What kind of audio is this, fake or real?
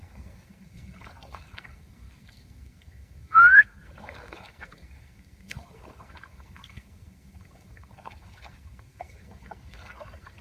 fake